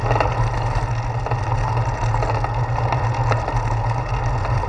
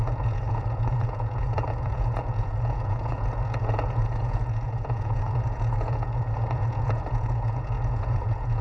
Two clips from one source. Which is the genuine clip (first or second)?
first